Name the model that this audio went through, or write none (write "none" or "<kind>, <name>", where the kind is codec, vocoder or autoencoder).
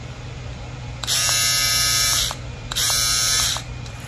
vocoder, BigVGAN v2